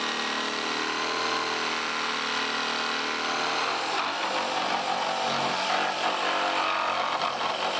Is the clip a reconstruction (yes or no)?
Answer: no